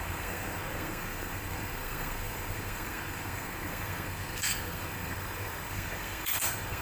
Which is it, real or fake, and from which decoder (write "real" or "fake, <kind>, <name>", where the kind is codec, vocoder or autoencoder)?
fake, codec, SNAC